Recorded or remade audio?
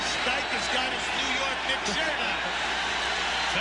recorded